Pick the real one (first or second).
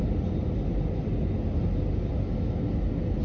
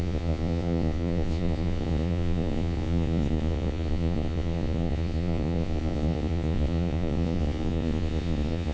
first